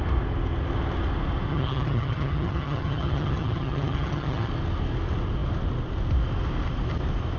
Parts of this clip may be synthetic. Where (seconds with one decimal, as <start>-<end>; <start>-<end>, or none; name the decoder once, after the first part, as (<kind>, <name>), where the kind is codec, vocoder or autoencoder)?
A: 1.5-4.5 (vocoder, HiFi-GAN)